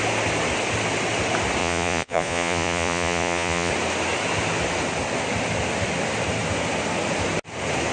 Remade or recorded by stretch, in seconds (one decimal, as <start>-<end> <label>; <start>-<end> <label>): 0.0-1.6 recorded; 1.6-3.7 remade; 3.7-7.9 recorded